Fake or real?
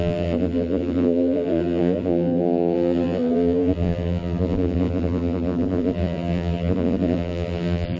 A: fake